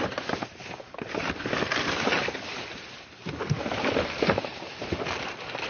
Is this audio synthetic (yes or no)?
no